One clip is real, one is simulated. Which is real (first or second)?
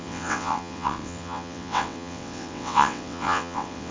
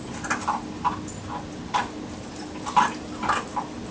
second